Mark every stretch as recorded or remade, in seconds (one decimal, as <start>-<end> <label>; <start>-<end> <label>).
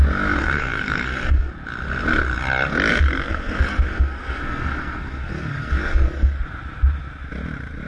0.0-0.4 recorded; 0.4-1.5 remade; 1.5-2.9 recorded; 2.9-6.4 remade; 6.4-7.9 recorded